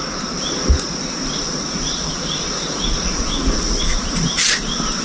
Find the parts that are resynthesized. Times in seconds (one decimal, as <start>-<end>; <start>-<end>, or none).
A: 1.4-4.4